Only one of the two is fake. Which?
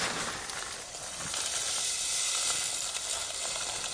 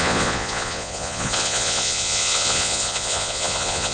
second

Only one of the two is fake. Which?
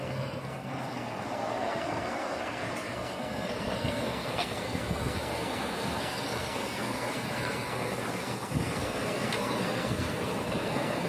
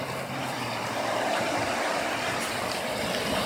first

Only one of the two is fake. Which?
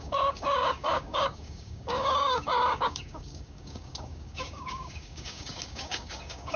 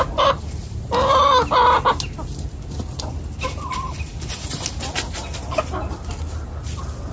first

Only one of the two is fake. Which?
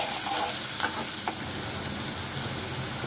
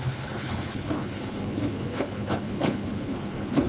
second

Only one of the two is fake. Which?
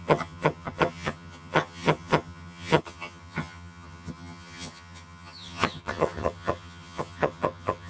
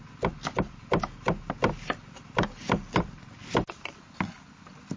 first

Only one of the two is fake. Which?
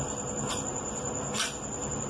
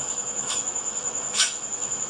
second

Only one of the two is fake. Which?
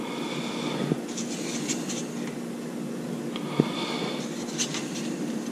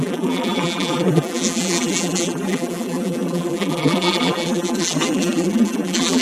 second